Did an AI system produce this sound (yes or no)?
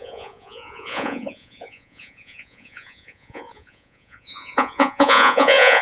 yes